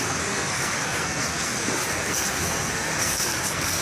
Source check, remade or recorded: remade